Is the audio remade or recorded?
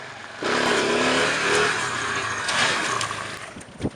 recorded